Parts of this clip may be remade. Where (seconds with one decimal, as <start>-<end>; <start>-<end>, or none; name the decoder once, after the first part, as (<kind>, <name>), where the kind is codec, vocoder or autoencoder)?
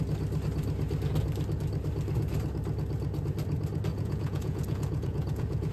3.9-5.7 (vocoder, Vocos)